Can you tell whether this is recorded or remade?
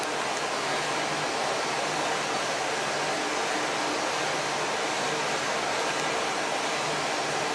recorded